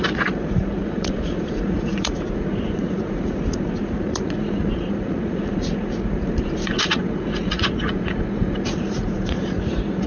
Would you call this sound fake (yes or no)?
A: yes